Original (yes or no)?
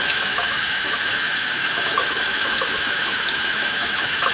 no